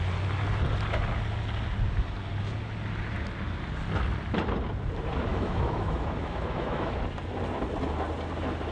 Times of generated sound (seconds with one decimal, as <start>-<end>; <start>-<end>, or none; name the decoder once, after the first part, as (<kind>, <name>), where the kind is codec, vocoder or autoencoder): 5.3-7.0 (autoencoder, DAC-VAE)